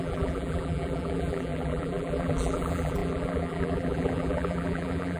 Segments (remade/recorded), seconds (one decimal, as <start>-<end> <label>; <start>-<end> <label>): 0.0-5.2 remade